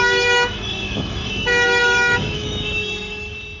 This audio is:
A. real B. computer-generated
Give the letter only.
B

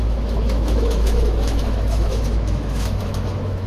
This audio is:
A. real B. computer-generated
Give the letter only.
B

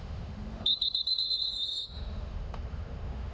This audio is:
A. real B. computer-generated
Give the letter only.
B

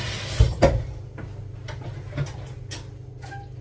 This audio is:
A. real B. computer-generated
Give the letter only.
A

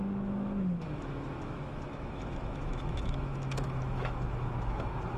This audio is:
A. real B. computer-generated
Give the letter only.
B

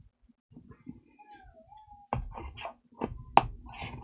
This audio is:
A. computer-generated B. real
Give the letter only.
B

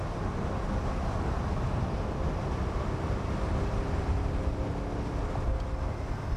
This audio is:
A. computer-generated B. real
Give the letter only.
B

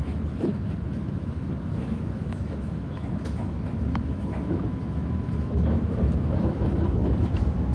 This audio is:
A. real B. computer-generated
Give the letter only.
B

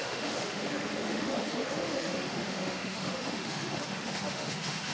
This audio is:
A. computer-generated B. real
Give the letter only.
A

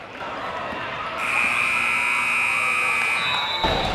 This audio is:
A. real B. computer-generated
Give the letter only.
A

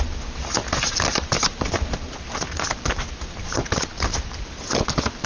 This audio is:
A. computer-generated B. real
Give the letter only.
B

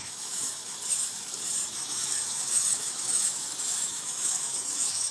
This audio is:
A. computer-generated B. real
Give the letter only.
A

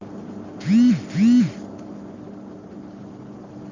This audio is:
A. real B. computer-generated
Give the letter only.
A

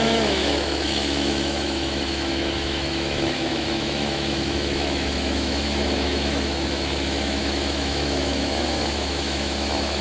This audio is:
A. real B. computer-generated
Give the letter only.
B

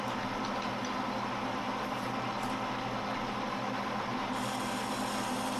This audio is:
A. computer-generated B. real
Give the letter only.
B